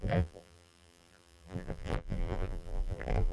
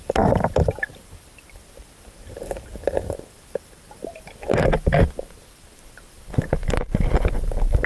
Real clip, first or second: second